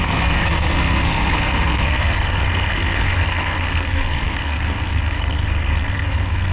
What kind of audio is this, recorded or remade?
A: remade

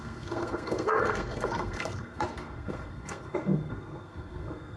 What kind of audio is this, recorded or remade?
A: remade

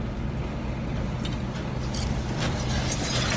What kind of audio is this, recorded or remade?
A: recorded